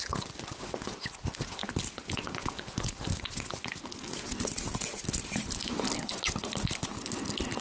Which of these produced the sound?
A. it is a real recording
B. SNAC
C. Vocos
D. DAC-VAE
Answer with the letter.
A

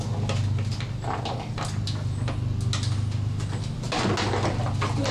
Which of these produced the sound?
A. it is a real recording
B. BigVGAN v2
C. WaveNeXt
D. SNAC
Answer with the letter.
A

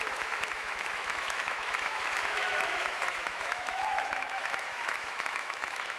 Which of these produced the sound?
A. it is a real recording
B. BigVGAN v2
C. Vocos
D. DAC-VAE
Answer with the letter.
D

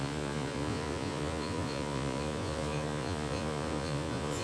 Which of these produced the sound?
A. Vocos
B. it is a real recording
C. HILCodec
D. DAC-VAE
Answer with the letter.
A